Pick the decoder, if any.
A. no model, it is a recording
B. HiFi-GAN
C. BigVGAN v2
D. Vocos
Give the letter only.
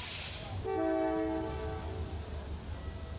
A